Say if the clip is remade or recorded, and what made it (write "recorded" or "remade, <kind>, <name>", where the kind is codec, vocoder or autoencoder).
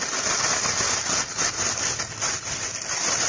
recorded